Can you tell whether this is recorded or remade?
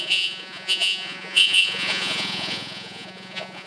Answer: remade